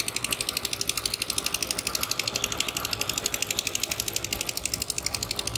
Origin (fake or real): real